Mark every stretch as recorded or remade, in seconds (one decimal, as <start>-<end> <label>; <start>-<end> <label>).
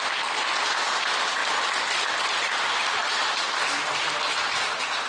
0.0-5.1 recorded